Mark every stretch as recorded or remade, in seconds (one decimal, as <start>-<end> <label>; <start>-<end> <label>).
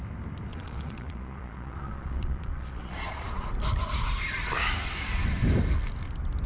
0.0-0.5 recorded; 0.5-3.5 remade; 3.5-6.5 recorded